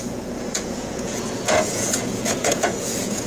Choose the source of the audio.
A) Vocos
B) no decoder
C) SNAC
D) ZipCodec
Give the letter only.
A